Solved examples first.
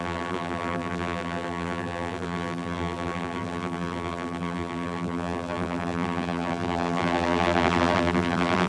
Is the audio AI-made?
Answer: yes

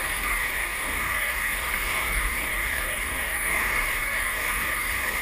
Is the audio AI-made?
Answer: yes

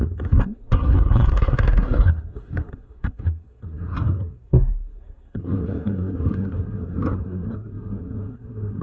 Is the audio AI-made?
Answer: yes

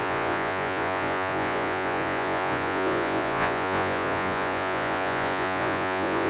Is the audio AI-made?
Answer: yes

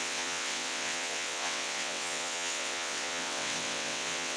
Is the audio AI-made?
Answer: yes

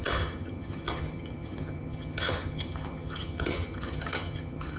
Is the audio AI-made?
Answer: yes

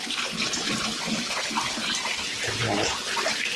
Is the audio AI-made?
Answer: no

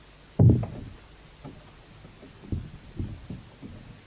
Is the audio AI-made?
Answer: no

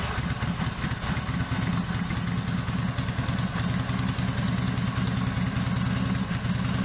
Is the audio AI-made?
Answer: no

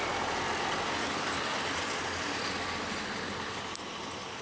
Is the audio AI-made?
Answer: no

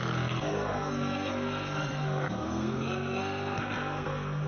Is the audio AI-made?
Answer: yes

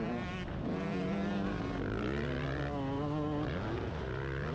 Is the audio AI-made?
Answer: no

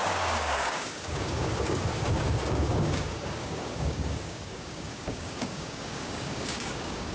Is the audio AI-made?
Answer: yes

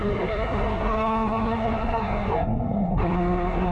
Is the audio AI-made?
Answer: yes